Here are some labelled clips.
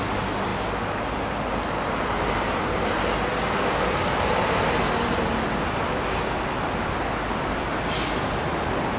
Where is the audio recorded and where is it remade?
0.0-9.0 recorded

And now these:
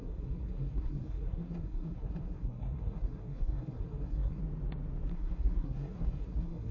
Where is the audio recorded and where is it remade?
0.0-4.4 remade; 4.4-5.1 recorded; 5.1-6.7 remade

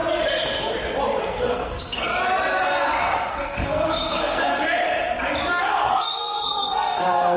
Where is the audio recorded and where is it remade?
0.0-1.2 recorded; 1.2-2.1 remade; 2.1-3.0 recorded; 3.0-4.5 remade; 4.5-5.6 recorded; 5.6-7.4 remade